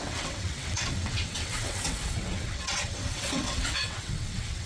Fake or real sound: fake